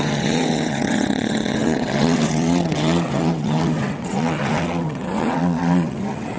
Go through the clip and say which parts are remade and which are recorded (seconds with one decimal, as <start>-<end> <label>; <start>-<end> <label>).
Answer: 0.0-6.4 remade